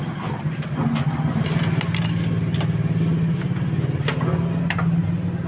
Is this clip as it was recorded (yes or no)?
yes